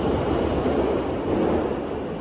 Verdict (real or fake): real